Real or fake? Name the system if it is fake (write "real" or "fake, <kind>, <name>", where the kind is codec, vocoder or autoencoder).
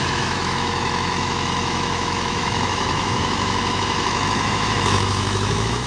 fake, autoencoder, DAC-VAE